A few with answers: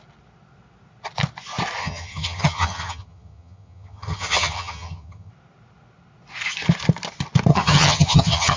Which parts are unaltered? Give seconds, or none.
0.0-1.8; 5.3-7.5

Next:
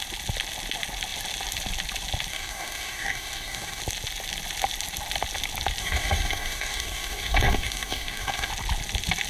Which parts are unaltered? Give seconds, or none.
0.0-2.3; 3.8-5.8; 8.5-9.3

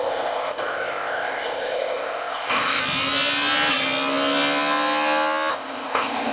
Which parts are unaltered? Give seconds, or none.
2.8-5.5

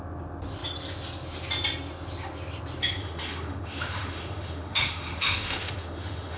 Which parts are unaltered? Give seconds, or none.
0.0-3.0